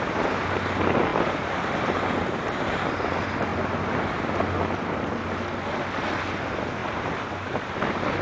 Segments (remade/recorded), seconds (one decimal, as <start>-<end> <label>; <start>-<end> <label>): 0.0-1.1 recorded; 1.1-3.1 remade; 3.1-6.8 recorded; 6.8-7.6 remade; 7.6-8.2 recorded